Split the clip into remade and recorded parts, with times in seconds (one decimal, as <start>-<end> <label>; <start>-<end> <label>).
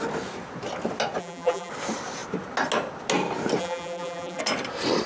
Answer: 0.0-1.2 recorded; 1.2-1.7 remade; 1.7-3.6 recorded; 3.6-4.4 remade; 4.4-5.1 recorded